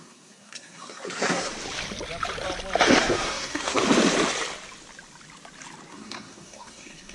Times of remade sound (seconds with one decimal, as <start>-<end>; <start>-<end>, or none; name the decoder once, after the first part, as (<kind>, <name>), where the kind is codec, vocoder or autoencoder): 0.0-1.5 (codec, SNAC); 3.0-3.8; 5.9-7.1